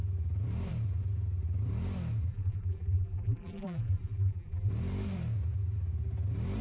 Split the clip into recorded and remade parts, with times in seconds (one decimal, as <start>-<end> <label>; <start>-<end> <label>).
0.0-2.3 recorded; 2.3-4.7 remade; 4.7-6.6 recorded